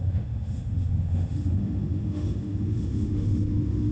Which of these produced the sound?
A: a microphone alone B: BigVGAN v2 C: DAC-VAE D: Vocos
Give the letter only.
C